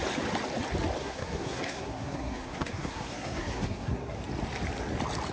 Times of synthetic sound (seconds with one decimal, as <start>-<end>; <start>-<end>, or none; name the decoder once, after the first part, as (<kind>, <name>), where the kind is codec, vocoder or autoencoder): 1.0-4.2 (codec, SNAC)